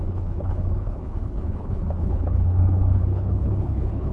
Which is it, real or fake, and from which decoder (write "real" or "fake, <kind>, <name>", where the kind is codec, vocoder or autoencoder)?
fake, codec, HILCodec